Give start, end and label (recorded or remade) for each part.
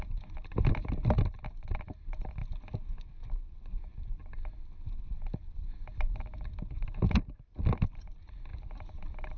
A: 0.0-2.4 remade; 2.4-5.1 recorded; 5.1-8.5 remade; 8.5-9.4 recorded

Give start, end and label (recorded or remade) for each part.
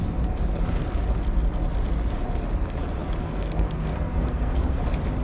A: 0.0-3.2 recorded; 3.2-4.8 remade; 4.8-5.2 recorded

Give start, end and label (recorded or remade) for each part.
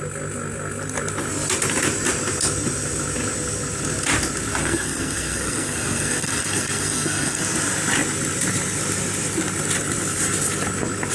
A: 0.0-4.6 recorded; 4.6-7.4 remade; 7.4-11.1 recorded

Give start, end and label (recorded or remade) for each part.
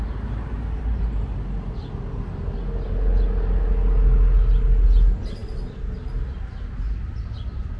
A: 0.0-7.8 recorded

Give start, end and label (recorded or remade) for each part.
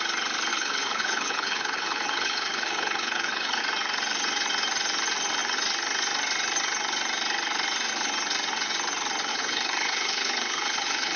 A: 0.0-0.5 recorded; 0.5-3.6 remade; 3.6-9.3 recorded; 9.3-11.2 remade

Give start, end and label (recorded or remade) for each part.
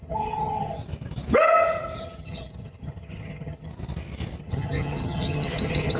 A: 0.0-0.8 remade; 0.8-2.0 recorded; 2.0-3.7 remade; 3.7-4.4 recorded; 4.4-6.0 remade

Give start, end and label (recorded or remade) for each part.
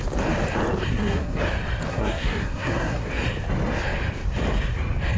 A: 0.0-0.9 recorded; 0.9-1.4 remade; 1.4-1.9 recorded; 1.9-3.1 remade; 3.1-5.2 recorded